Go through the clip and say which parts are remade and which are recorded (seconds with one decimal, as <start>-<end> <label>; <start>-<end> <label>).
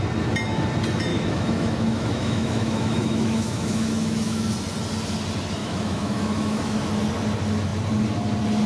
0.0-1.1 recorded; 1.1-4.5 remade; 4.5-5.6 recorded; 5.6-6.9 remade; 6.9-8.7 recorded